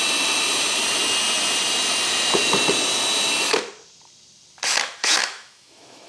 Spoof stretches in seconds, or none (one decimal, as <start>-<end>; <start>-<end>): 5.0-6.1